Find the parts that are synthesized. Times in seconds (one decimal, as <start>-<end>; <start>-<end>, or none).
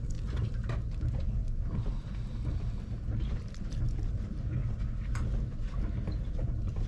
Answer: none